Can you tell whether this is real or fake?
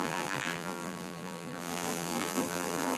fake